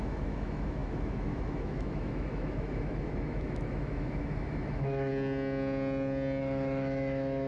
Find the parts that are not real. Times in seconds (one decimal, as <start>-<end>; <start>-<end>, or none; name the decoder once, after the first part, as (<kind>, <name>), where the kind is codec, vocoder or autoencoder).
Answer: 0.0-5.1 (autoencoder, DAC-VAE); 6.4-7.5

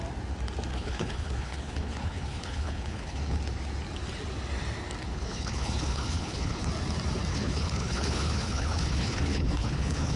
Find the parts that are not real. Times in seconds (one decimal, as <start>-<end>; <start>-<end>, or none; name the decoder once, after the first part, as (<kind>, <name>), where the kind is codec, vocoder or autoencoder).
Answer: 0.7-3.4 (codec, HILCodec); 5.1-6.7; 7.3-10.2

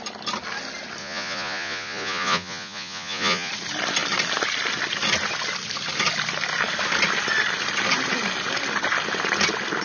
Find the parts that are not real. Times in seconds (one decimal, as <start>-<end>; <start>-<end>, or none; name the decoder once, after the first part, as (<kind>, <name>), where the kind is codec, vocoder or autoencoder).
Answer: 1.0-3.5 (vocoder, Vocos)

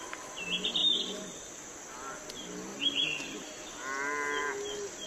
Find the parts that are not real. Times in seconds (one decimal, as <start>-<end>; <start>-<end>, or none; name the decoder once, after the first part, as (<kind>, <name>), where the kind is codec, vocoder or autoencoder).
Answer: none

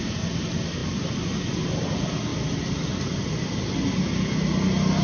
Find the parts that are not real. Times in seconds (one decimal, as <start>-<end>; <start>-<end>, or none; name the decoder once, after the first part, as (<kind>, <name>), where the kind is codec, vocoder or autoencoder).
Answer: 0.8-1.4 (vocoder, BigVGAN v2); 2.3-3.6

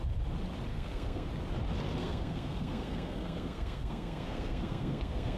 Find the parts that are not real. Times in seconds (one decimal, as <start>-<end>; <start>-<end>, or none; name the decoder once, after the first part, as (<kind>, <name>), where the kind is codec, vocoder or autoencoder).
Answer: 0.7-1.3 (codec, SNAC); 2.0-5.4

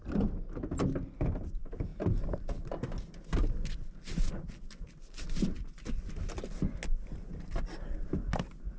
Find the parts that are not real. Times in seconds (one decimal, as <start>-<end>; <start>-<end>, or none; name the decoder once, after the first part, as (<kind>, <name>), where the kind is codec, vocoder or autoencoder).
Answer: none

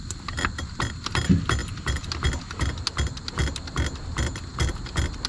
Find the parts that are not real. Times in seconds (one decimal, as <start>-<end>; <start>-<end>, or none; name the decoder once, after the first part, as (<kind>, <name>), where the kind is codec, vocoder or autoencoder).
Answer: none